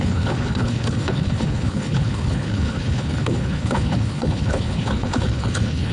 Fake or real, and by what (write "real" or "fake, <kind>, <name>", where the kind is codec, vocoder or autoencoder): fake, codec, HILCodec